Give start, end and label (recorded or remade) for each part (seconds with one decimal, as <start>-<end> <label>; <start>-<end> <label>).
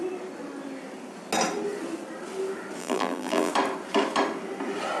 0.0-2.8 recorded; 2.8-3.5 remade; 3.5-5.0 recorded